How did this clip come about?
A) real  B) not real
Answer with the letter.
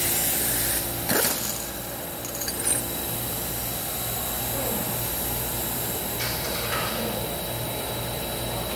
A